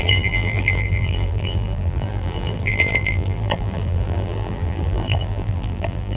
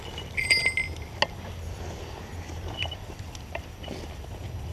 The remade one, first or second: first